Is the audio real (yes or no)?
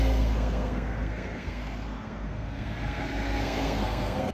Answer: no